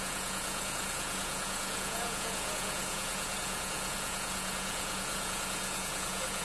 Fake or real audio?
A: fake